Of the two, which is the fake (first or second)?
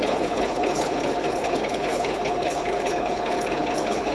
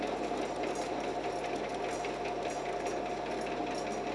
first